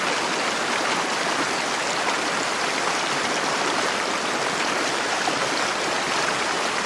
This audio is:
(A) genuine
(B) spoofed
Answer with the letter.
A